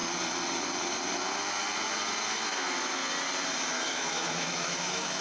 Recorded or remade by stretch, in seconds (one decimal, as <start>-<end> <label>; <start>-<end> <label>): 0.0-2.3 recorded; 2.3-3.0 remade; 3.0-3.7 recorded; 3.7-5.2 remade